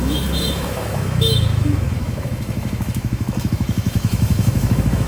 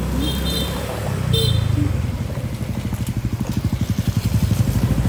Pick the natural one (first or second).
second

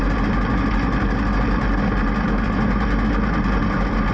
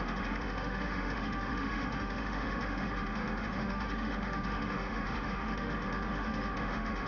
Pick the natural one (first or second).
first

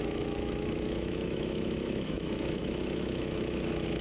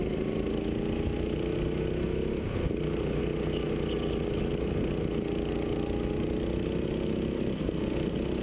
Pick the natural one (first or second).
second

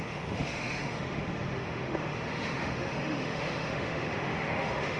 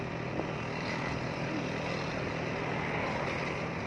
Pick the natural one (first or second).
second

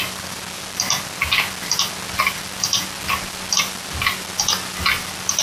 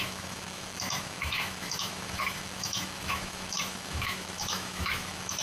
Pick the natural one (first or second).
first